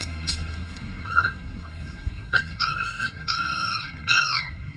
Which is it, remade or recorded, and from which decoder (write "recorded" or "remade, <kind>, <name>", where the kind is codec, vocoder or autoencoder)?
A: remade, codec, SNAC